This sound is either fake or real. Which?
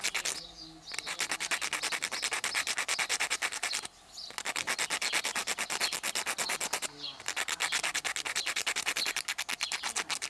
real